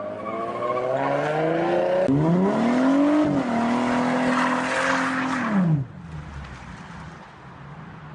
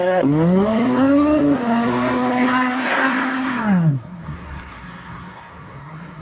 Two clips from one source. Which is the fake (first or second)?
second